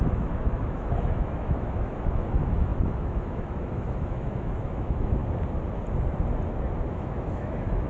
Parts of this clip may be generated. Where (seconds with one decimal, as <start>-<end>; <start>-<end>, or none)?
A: 0.0-5.2; 6.9-7.9